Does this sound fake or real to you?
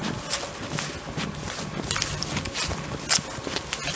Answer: real